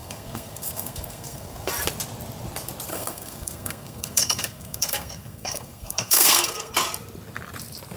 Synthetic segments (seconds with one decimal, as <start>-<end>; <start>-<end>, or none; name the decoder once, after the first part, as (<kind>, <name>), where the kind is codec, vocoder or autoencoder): 0.0-1.7 (codec, SNAC); 2.9-6.7